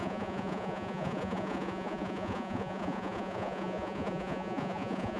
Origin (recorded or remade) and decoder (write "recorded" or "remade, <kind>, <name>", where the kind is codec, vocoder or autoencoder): remade, vocoder, Vocos